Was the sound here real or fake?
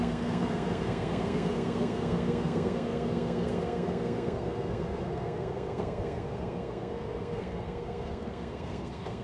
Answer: fake